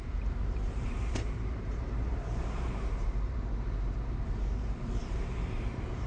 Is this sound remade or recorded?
remade